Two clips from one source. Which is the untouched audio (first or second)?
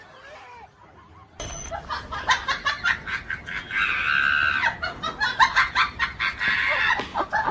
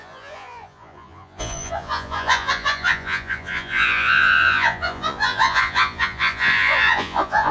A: first